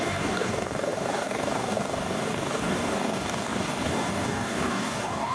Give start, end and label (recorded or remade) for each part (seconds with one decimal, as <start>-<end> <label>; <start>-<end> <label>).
0.0-5.3 remade